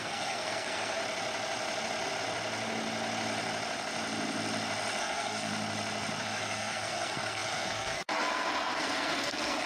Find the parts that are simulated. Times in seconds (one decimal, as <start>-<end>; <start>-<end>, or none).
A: 0.0-1.0; 5.0-5.5; 6.2-9.7